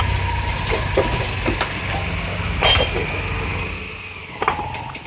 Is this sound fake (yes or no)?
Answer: no